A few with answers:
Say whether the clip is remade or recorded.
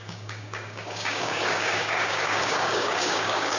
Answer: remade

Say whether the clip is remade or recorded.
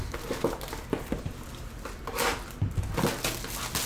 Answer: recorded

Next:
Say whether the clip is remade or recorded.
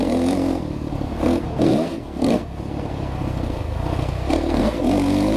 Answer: remade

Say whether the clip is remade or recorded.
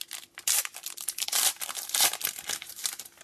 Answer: recorded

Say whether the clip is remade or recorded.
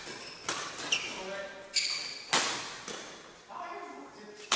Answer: recorded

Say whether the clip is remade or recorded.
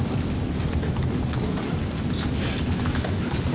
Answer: recorded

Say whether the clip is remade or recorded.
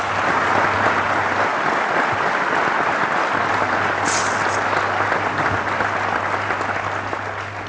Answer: recorded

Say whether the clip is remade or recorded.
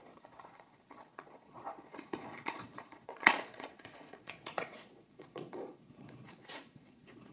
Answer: remade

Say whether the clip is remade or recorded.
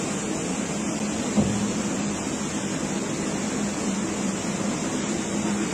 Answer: recorded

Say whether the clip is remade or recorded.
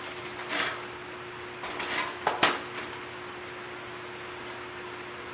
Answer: recorded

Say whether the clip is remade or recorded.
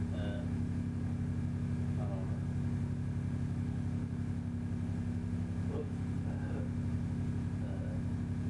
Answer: recorded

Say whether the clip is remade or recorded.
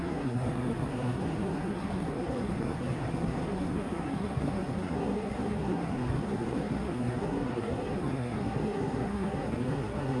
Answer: remade